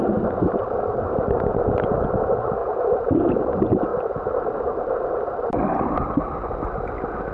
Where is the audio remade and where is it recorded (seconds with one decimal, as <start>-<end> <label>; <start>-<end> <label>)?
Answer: 0.0-2.6 recorded; 2.6-3.2 remade; 3.2-7.3 recorded